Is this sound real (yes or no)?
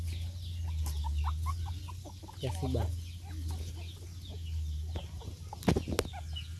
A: yes